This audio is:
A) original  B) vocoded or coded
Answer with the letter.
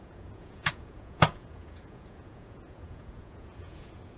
B